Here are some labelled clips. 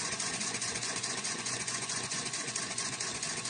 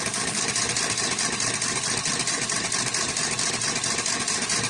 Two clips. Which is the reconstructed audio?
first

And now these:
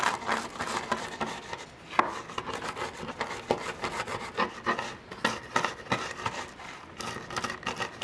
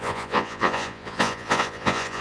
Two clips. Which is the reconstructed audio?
second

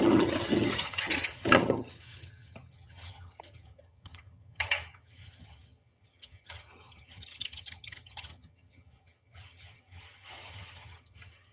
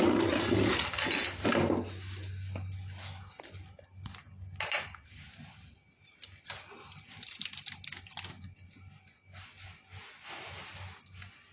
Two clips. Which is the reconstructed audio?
first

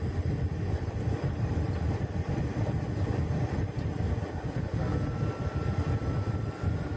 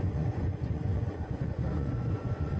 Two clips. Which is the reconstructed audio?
second